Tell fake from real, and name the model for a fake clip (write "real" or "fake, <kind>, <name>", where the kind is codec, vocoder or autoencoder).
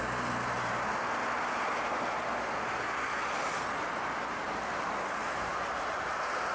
real